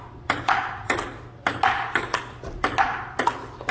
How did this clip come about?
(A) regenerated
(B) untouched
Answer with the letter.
B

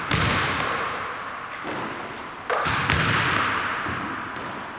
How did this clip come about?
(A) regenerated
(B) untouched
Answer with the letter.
A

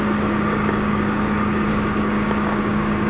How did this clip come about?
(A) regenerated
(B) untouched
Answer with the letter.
A